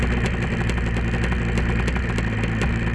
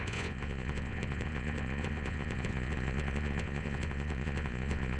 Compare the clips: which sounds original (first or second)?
first